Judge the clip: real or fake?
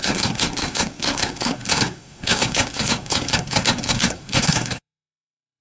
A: fake